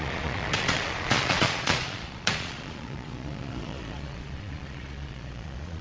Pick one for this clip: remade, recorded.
remade